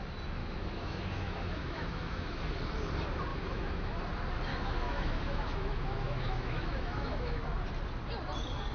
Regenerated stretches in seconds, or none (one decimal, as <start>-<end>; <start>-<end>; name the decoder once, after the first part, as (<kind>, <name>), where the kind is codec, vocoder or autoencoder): 0.4-2.4 (autoencoder, DAC-VAE); 3.3-4.0; 4.5-7.4